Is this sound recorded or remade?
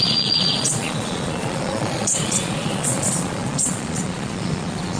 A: remade